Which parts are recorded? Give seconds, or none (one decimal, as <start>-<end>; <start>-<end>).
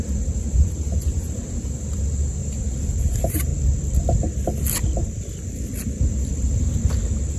3.5-7.4